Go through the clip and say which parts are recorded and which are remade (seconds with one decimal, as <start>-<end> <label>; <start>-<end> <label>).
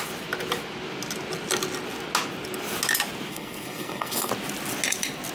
0.0-3.3 recorded; 3.3-4.3 remade; 4.3-5.3 recorded